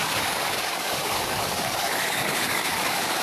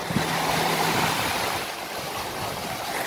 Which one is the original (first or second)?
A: second